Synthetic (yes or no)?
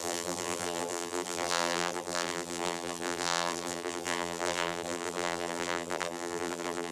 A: yes